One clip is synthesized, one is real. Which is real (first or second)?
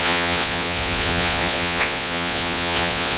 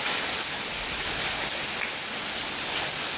second